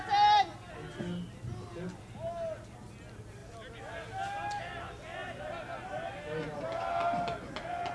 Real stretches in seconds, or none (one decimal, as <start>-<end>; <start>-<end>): 0.0-7.9